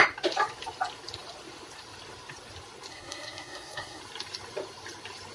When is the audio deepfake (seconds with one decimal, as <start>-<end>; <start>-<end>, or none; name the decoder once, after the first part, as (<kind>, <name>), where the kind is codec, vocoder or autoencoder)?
2.9-4.0 (codec, SNAC)